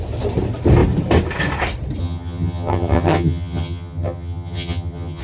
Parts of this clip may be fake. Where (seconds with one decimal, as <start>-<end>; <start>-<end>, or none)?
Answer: 2.0-5.2